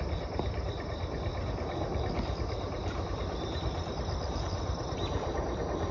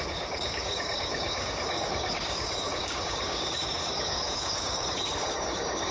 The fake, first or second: second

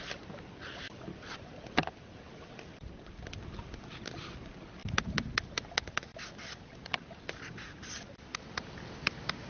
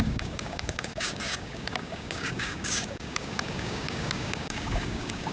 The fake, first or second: second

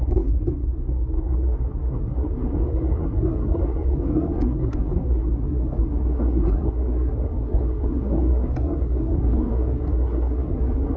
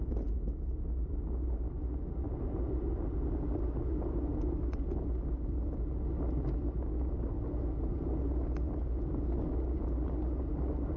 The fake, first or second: first